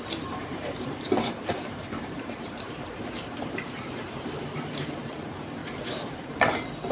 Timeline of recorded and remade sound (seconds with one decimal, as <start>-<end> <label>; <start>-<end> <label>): 0.0-5.6 remade; 5.6-6.1 recorded; 6.1-6.9 remade

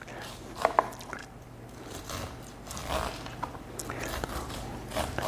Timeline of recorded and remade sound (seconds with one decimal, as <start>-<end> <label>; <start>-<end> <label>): 0.0-1.2 recorded; 1.2-2.0 remade; 2.0-5.3 recorded

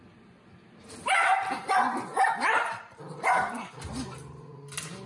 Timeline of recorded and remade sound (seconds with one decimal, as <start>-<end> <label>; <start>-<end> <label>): 0.0-2.1 recorded; 2.1-3.7 remade; 3.7-5.1 recorded

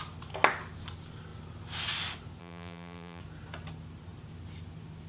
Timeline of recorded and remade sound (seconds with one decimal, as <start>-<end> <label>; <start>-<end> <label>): 0.0-2.4 recorded; 2.4-3.2 remade; 3.2-5.1 recorded

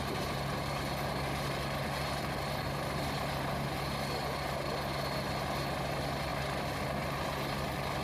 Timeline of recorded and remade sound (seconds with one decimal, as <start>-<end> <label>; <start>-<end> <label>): 0.0-8.0 recorded

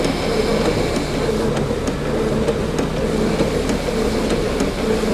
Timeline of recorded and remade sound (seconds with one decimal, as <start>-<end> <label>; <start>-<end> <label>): 0.0-5.1 recorded

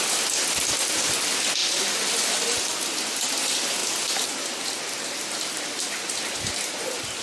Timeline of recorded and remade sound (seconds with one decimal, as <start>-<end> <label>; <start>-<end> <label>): 0.0-1.6 recorded; 1.6-3.3 remade; 3.3-7.2 recorded